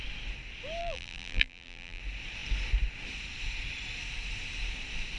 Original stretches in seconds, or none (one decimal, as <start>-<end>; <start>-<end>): 0.0-0.8; 2.0-5.2